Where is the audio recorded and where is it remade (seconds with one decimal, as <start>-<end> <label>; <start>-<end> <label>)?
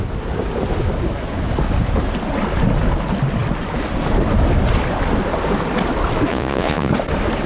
0.0-6.3 recorded; 6.3-6.9 remade; 6.9-7.5 recorded